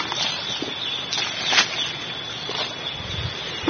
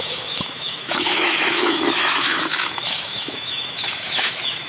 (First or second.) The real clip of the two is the first